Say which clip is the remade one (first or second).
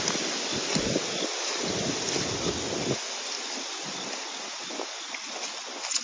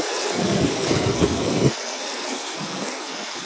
second